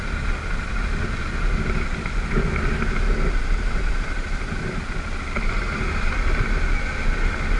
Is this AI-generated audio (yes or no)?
no